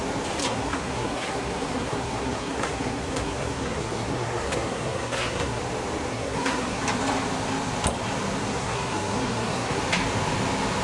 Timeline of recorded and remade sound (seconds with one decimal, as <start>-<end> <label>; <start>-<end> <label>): 0.0-0.4 recorded; 0.4-5.6 remade; 5.6-6.1 recorded; 6.1-6.8 remade; 6.8-8.4 recorded; 8.4-9.8 remade; 9.8-10.8 recorded